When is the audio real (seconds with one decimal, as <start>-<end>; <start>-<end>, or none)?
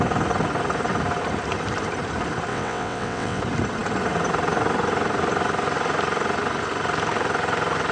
0.0-2.5; 3.4-7.9